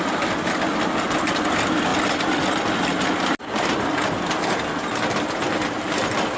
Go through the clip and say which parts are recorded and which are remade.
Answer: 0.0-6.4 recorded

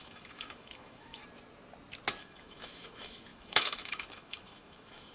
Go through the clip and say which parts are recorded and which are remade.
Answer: 0.0-1.2 remade; 1.2-2.2 recorded; 2.2-5.1 remade

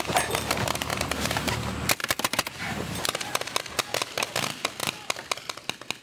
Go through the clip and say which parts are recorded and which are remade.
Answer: 0.0-0.9 recorded; 0.9-1.5 remade; 1.5-2.0 recorded; 2.0-3.5 remade; 3.5-6.0 recorded

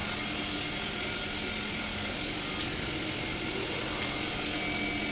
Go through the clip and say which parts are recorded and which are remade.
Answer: 0.0-1.9 recorded; 1.9-2.9 remade; 2.9-5.1 recorded

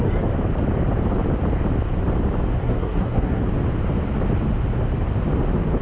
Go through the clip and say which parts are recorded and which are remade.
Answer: 0.0-2.6 recorded; 2.6-3.5 remade; 3.5-5.8 recorded